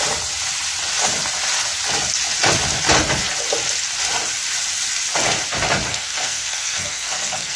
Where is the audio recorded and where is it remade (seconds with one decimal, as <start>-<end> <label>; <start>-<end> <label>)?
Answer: 0.0-5.9 recorded; 5.9-7.6 remade

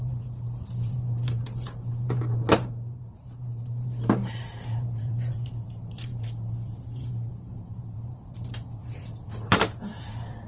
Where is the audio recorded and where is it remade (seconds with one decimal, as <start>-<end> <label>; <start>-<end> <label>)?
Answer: 0.0-10.5 remade